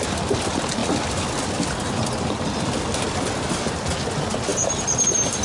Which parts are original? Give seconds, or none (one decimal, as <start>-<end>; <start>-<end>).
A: 0.0-5.4